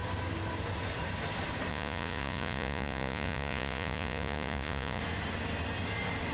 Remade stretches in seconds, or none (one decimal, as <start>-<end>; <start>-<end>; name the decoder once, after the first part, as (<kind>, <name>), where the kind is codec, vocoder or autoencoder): 1.7-5.0 (vocoder, Vocos)